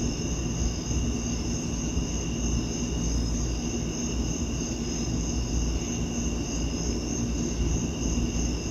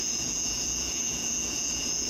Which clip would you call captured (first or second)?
first